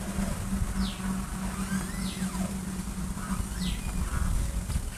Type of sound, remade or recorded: recorded